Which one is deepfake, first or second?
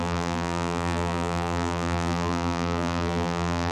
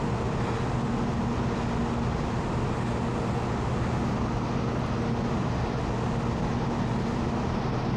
first